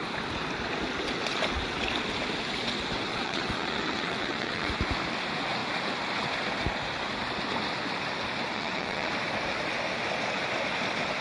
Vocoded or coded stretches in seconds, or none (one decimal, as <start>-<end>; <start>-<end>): 3.1-4.7; 8.5-9.1